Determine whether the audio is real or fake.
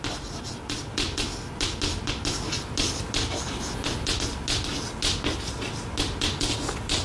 real